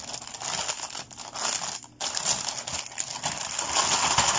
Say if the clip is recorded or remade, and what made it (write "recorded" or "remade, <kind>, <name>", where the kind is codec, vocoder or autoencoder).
recorded